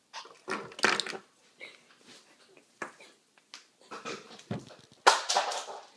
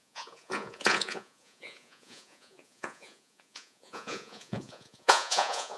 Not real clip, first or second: second